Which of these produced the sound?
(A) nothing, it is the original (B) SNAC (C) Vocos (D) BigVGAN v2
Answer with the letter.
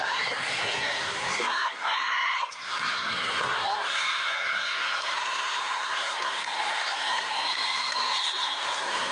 B